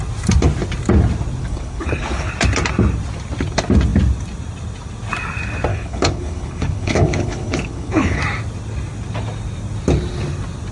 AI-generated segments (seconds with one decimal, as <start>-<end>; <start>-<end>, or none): 1.4-2.3; 5.7-8.2